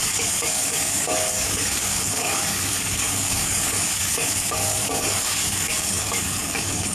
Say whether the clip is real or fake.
fake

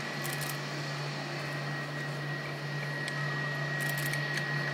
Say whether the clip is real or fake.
real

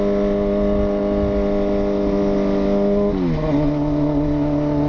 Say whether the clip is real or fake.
real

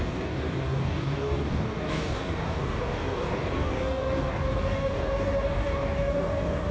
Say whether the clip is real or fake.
fake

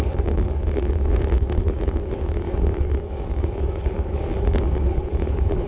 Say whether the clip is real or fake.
fake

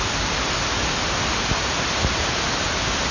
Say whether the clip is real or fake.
real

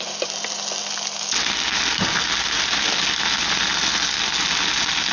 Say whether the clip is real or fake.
real